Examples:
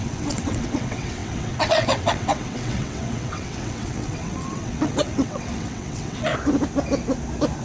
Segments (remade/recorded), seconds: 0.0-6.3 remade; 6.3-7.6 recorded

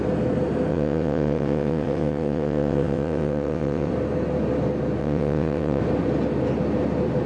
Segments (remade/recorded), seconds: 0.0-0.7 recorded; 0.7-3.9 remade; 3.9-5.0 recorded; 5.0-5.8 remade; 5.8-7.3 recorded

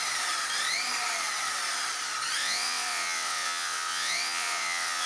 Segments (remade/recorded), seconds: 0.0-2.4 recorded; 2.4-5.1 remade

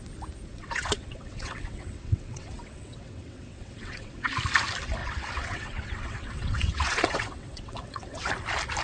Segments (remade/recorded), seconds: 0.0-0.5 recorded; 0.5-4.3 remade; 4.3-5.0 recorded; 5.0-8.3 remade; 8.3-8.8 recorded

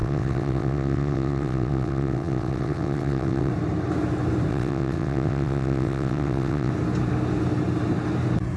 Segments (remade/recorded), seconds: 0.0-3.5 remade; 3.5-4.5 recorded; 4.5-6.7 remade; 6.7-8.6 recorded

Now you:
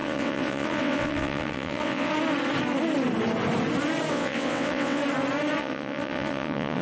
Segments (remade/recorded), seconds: 0.0-2.1 remade; 2.1-4.1 recorded; 4.1-5.0 remade; 5.0-5.6 recorded; 5.6-6.8 remade

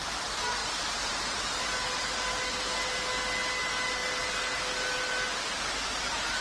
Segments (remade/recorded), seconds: 0.0-6.4 recorded

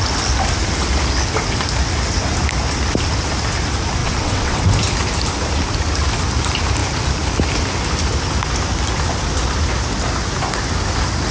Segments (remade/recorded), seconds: 0.0-4.0 recorded; 4.0-4.6 remade; 4.6-11.3 recorded